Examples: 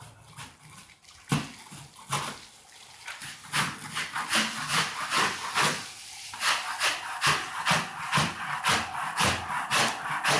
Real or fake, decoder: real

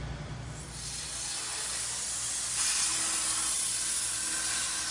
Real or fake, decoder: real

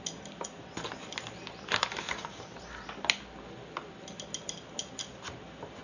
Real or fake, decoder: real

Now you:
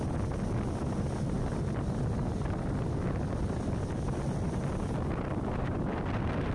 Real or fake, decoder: real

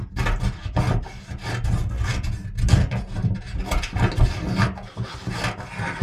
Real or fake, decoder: real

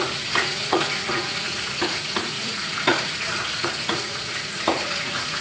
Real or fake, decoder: fake, vocoder, Vocos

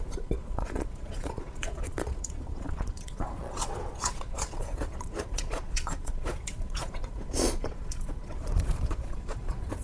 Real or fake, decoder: fake, vocoder, Vocos